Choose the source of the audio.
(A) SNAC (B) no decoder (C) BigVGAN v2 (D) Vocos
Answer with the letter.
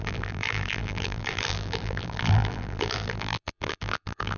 C